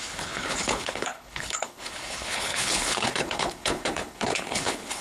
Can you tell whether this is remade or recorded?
remade